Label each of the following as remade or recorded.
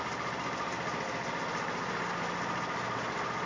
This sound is recorded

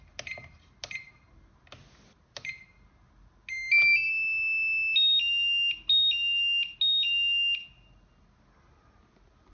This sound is recorded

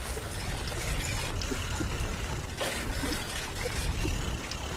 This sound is recorded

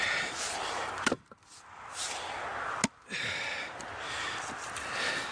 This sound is recorded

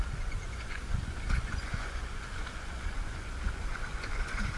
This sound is remade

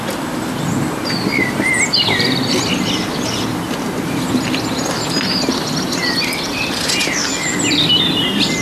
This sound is recorded